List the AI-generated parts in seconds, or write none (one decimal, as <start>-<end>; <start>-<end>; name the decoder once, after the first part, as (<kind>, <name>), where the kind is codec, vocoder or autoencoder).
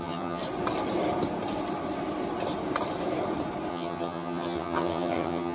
0.0-0.4 (vocoder, HiFi-GAN); 3.7-5.5